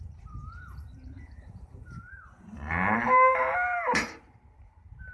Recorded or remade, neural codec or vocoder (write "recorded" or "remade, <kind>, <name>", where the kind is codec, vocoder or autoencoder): remade, vocoder, BigVGAN v2